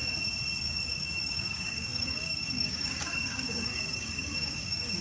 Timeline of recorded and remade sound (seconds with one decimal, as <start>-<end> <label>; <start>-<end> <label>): 0.0-0.6 recorded; 0.6-5.0 remade